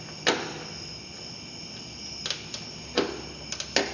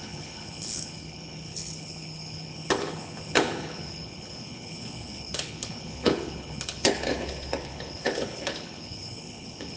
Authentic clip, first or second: first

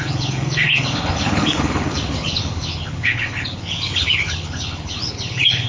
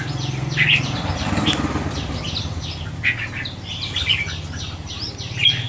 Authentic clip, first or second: second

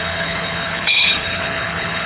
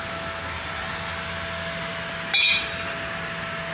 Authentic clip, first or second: second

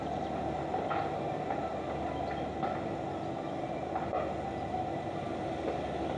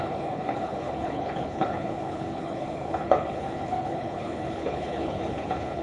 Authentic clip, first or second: first